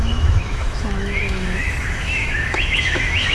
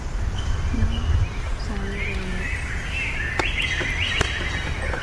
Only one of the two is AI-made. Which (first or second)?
first